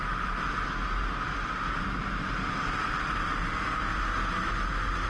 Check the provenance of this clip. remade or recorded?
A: recorded